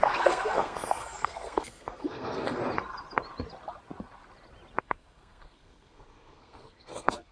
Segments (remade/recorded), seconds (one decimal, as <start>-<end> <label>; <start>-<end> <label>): 0.0-2.6 remade; 2.6-4.8 recorded; 4.8-7.3 remade